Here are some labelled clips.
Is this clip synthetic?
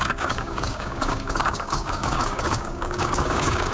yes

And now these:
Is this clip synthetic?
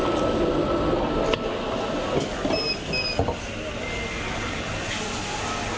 no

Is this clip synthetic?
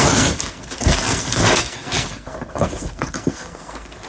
yes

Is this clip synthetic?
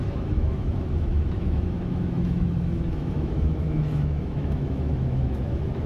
yes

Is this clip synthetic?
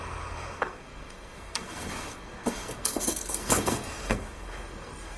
yes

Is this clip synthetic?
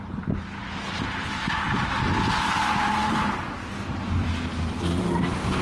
no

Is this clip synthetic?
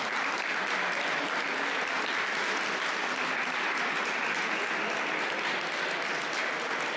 no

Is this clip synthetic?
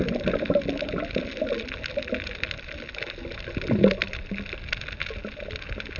no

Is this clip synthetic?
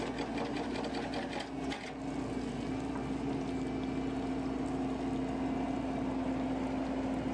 no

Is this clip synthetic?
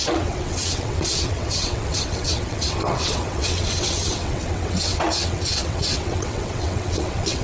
yes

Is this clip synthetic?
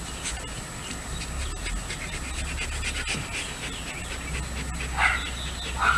no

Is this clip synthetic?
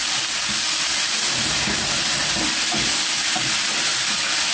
no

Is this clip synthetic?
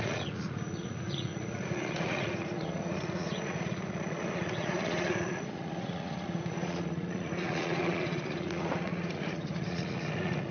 yes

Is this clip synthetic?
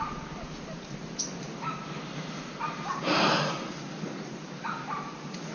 no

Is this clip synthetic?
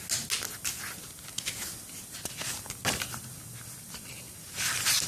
no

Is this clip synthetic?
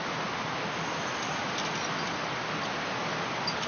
no